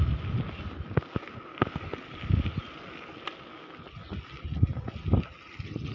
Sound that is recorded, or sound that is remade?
recorded